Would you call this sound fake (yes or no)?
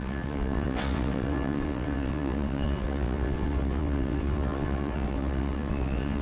yes